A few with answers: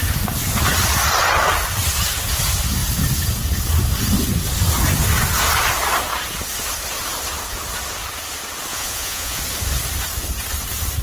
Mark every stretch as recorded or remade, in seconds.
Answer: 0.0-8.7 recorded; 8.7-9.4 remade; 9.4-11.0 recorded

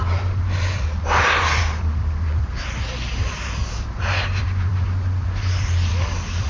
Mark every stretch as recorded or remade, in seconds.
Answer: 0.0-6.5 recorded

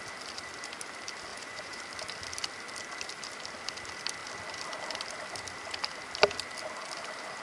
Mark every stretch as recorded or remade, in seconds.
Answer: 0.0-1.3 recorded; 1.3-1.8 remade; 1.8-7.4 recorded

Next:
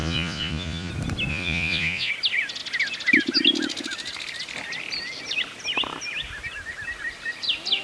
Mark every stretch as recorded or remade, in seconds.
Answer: 0.0-0.9 remade; 0.9-1.3 recorded; 1.3-2.1 remade; 2.1-7.8 recorded